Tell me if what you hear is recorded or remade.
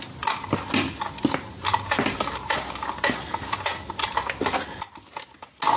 recorded